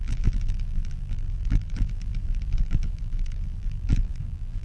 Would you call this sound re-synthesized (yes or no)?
yes